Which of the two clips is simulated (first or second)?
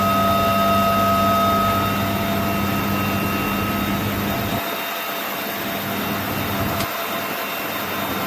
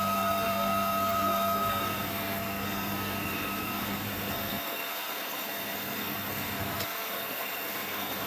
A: second